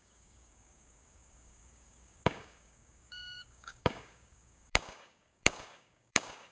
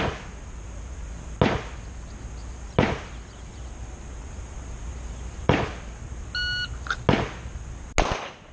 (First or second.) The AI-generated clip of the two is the first